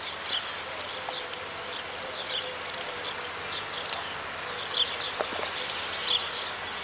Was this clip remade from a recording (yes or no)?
no